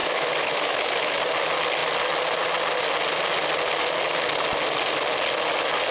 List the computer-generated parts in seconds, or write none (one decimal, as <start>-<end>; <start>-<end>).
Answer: 0.0-1.1